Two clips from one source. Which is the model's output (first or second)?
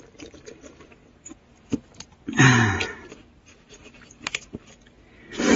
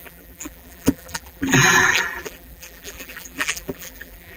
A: second